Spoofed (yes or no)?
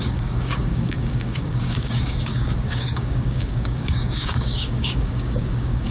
yes